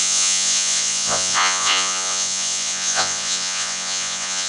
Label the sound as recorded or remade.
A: remade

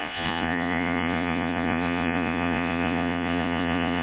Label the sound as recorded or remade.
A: remade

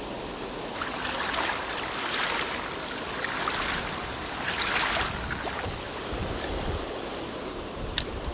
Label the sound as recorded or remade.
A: recorded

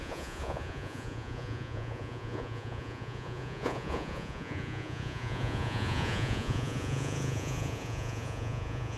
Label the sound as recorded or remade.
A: remade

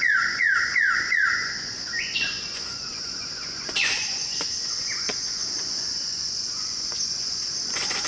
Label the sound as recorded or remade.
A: remade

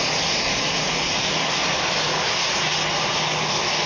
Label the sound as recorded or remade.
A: recorded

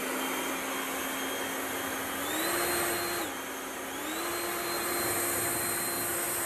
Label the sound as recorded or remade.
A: recorded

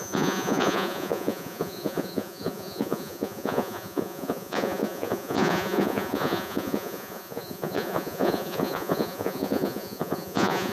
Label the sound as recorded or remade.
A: remade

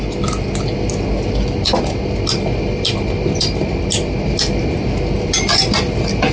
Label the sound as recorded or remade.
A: recorded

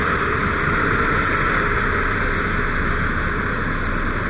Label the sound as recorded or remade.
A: recorded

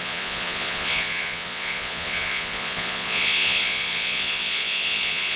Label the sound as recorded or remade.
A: remade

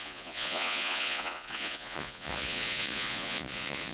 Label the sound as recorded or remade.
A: remade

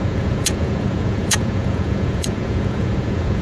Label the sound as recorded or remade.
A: remade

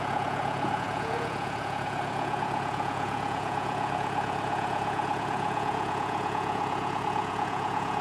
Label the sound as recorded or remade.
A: remade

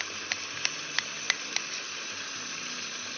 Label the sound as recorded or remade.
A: recorded